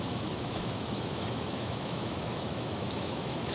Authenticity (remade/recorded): remade